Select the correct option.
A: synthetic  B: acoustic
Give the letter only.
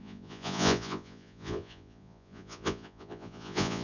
A